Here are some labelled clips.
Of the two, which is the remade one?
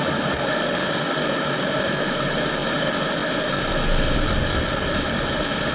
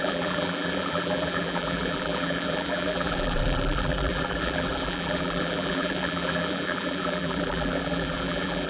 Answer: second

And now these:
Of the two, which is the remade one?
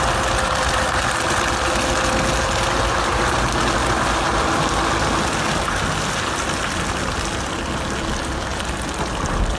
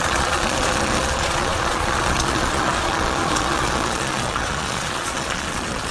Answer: second